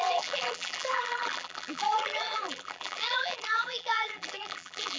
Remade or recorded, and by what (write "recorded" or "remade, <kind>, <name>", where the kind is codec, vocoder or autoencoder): remade, vocoder, BigVGAN v2